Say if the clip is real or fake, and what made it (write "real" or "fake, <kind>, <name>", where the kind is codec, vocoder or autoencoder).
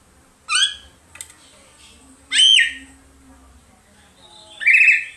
real